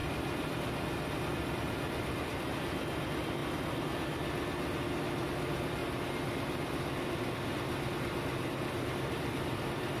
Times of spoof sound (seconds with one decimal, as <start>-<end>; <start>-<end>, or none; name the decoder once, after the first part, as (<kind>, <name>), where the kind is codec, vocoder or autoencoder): 0.0-3.4 (vocoder, BigVGAN v2); 4.9-5.8; 7.9-10.0